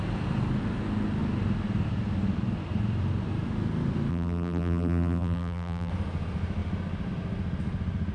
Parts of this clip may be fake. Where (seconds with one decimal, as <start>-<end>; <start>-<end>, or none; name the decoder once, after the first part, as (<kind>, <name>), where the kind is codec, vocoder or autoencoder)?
4.1-5.9 (vocoder, BigVGAN v2)